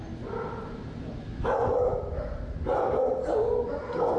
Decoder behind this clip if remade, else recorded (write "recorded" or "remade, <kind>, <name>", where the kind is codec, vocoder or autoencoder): recorded